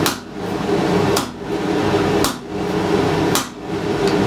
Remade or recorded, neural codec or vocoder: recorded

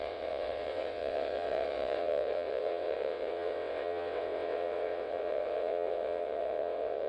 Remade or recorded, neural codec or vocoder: remade, vocoder, WaveNeXt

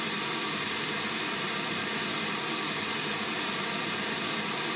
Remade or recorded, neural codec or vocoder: recorded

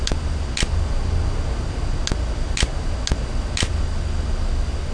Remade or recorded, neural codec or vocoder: recorded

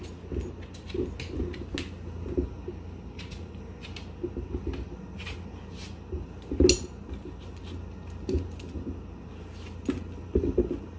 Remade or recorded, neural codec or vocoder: recorded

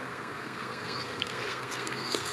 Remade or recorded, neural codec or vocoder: remade, codec, SNAC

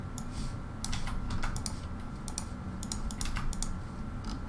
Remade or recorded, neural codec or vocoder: recorded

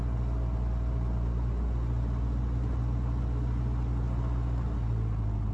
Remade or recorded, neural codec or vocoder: recorded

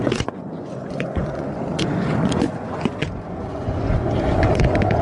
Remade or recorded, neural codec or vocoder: remade, vocoder, Vocos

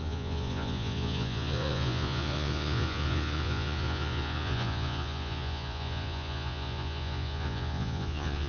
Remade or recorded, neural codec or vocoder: remade, vocoder, Vocos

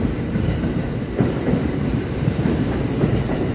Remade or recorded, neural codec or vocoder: remade, vocoder, BigVGAN v2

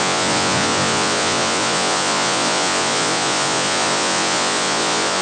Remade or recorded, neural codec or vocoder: remade, vocoder, Vocos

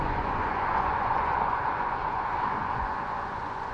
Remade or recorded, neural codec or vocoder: remade, vocoder, Vocos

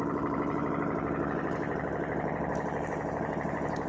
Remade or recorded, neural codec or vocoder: remade, vocoder, BigVGAN v2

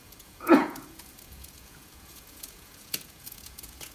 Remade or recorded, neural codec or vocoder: remade, vocoder, Vocos